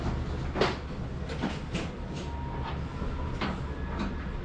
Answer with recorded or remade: recorded